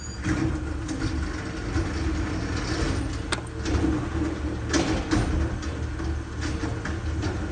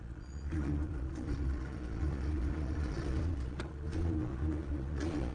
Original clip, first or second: first